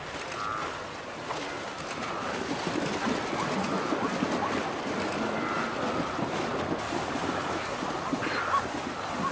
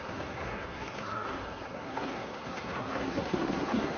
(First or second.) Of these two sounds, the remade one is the second